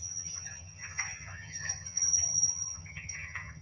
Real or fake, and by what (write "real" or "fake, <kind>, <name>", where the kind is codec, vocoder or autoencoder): fake, vocoder, HiFi-GAN